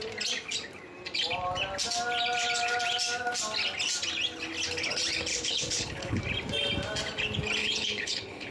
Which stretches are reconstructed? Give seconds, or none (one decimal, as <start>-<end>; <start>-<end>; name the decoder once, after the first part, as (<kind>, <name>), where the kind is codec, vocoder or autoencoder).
5.3-6.2 (codec, HILCodec); 7.6-8.5

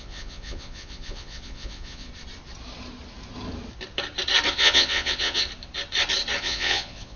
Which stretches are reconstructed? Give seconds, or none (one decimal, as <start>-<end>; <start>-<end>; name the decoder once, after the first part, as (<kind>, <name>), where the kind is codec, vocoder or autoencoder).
0.0-2.1 (vocoder, Vocos); 4.5-5.4; 6.4-7.2

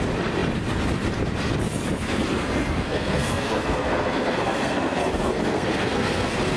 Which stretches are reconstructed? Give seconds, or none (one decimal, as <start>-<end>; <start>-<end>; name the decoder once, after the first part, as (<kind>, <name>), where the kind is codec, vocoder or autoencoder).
2.3-6.6 (codec, SNAC)

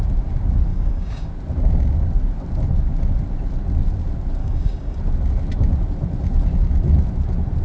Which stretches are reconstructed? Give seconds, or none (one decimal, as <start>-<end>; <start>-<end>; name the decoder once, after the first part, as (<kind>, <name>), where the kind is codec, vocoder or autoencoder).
0.7-1.3 (codec, DAC); 4.4-5.0

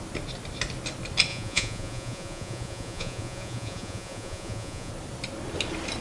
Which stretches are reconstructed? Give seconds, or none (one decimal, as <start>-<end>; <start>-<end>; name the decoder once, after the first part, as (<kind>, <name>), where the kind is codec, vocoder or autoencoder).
1.3-4.9 (vocoder, Vocos)

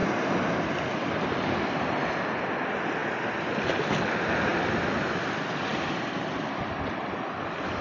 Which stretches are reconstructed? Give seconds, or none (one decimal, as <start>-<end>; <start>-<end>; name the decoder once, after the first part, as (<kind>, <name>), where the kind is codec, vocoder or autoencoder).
3.0-3.7 (vocoder, BigVGAN v2); 4.5-5.1; 5.7-7.8